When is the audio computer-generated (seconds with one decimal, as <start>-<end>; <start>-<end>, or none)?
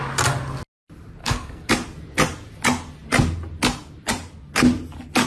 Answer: 1.2-1.7